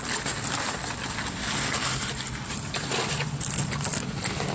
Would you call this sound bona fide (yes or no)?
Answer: yes